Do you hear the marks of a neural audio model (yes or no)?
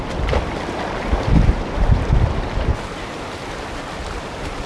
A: no